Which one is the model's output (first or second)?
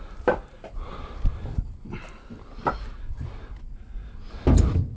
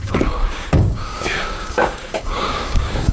second